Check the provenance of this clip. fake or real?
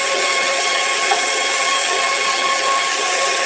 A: fake